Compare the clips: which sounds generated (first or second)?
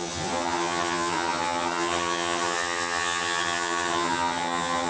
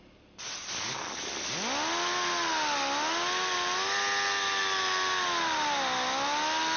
first